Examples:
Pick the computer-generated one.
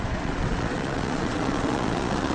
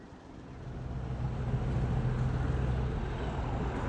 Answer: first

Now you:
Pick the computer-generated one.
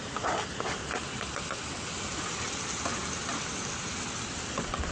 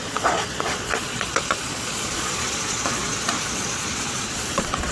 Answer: second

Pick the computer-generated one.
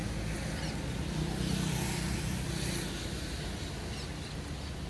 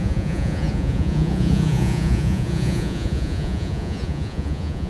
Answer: second